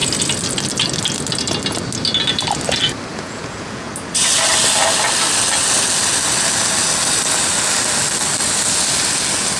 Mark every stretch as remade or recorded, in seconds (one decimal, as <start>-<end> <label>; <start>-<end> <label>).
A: 0.0-3.1 recorded; 3.1-3.9 remade; 3.9-9.6 recorded